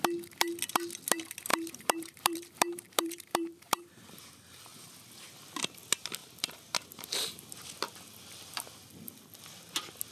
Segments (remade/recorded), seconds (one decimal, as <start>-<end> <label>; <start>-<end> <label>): 0.0-1.5 recorded; 1.5-4.2 remade; 4.2-10.1 recorded